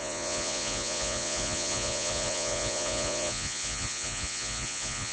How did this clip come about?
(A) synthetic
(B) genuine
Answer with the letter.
A